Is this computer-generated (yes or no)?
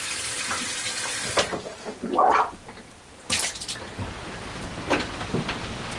no